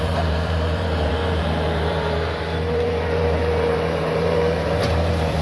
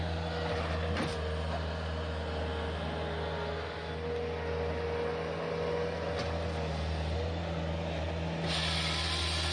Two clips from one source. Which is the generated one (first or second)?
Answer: first